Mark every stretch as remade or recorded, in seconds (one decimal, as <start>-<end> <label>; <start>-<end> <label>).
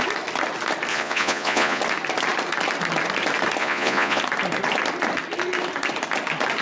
0.0-0.9 recorded; 0.9-1.8 remade; 1.8-3.6 recorded; 3.6-4.2 remade; 4.2-6.6 recorded